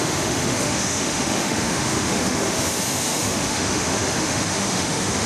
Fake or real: fake